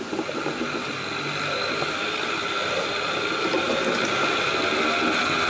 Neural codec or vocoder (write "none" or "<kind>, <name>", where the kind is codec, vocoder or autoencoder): none